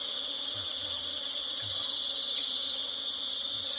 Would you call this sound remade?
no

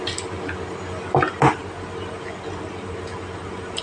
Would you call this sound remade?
no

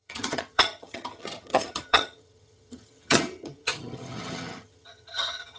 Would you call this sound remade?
yes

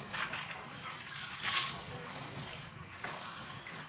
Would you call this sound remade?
yes